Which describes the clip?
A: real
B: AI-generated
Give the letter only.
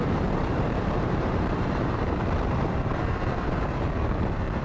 B